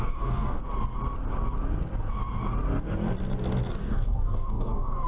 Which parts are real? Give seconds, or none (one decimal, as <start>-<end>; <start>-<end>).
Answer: 0.6-3.7